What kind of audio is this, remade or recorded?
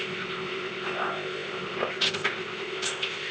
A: remade